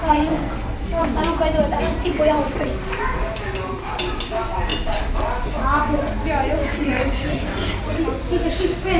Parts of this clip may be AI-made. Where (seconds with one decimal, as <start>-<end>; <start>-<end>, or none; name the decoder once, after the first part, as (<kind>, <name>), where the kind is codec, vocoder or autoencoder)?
0.0-1.0 (codec, SNAC); 6.6-8.0